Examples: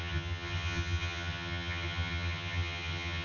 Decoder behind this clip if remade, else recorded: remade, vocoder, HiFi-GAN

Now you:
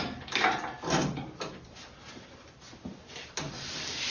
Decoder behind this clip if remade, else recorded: recorded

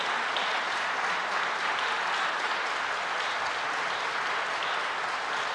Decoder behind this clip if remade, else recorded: recorded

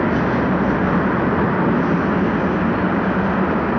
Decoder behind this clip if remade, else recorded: recorded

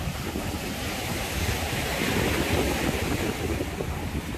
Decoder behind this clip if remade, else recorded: recorded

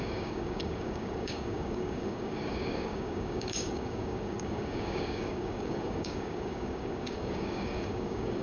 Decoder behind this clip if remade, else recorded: remade, codec, DAC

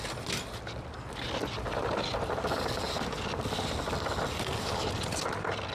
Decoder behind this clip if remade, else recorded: recorded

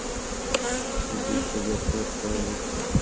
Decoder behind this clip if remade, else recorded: recorded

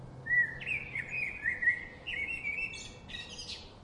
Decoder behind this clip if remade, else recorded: recorded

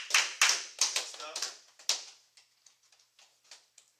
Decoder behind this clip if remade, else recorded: recorded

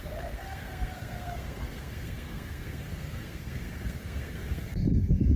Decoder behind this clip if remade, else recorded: remade, codec, SNAC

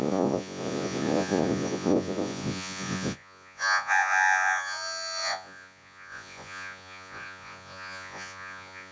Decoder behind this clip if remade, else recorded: remade, vocoder, Vocos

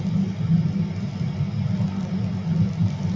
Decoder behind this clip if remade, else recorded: recorded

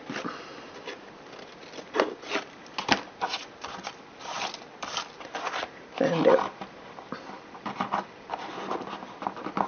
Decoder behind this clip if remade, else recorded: recorded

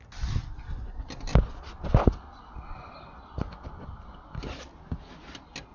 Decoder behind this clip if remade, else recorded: recorded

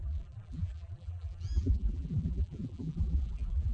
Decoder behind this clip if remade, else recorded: remade, vocoder, BigVGAN v2